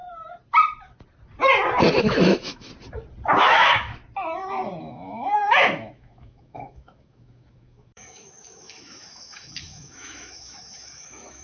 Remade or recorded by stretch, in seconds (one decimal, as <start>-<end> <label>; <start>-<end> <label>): 0.0-2.0 recorded; 2.0-2.7 remade; 2.7-3.4 recorded; 3.4-4.0 remade; 4.0-4.8 recorded; 4.8-11.4 remade